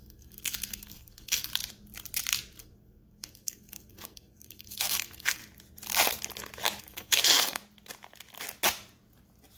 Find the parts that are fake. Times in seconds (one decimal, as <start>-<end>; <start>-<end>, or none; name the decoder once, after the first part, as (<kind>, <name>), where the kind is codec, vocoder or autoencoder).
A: 0.0-1.5 (codec, SNAC); 2.6-5.4; 6.8-7.6